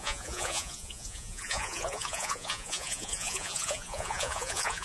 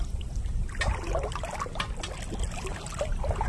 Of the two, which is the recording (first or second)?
second